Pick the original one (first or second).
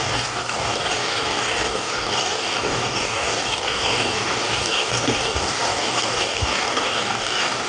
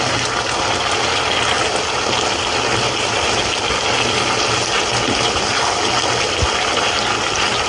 second